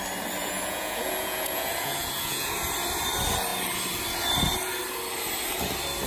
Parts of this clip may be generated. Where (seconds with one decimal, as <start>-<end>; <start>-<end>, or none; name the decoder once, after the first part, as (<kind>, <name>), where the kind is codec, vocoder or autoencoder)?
0.4-2.5 (vocoder, Vocos)